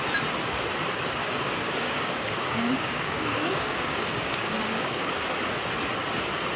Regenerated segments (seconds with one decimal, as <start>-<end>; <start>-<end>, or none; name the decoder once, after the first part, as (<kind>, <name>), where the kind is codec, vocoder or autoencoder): 1.2-5.2 (codec, DAC)